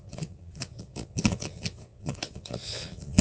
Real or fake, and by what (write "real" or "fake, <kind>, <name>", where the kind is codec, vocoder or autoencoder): fake, vocoder, Vocos